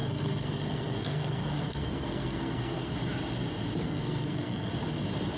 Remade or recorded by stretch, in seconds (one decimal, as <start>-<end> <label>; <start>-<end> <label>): 0.0-2.9 remade; 2.9-3.8 recorded; 3.8-4.7 remade; 4.7-5.4 recorded